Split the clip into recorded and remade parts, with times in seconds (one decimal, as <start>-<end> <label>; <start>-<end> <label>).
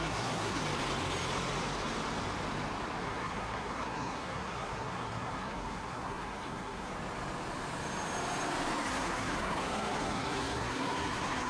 0.0-0.6 remade; 0.6-3.0 recorded; 3.0-6.9 remade; 6.9-8.9 recorded; 8.9-11.5 remade